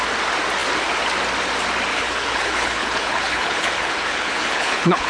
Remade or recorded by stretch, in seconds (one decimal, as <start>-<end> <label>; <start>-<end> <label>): 0.0-1.9 recorded; 1.9-5.1 remade